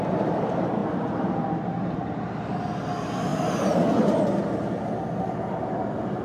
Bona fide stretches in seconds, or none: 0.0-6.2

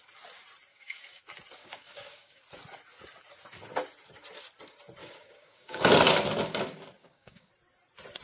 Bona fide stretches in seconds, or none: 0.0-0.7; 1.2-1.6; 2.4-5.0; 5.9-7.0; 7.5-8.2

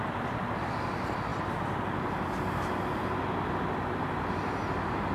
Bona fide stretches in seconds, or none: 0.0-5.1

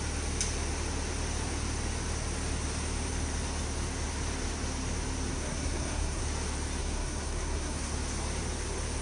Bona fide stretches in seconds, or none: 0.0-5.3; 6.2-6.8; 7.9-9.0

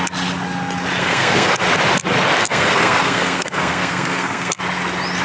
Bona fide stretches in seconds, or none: 0.0-1.0; 1.5-2.4; 4.6-5.2

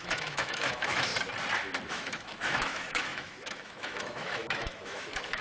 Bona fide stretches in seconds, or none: 1.1-1.9